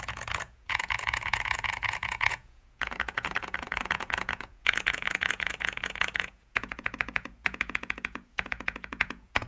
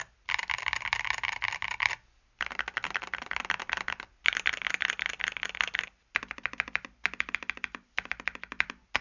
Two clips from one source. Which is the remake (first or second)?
first